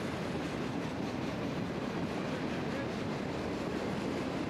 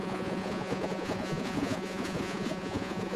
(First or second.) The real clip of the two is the first